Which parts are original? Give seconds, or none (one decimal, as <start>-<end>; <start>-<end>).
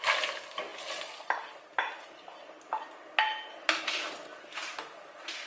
0.0-5.5